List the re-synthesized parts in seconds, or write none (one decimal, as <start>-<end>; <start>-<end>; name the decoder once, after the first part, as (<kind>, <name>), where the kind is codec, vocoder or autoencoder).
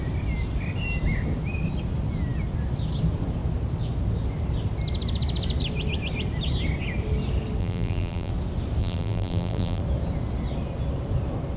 7.6-8.3 (vocoder, BigVGAN v2); 8.8-9.8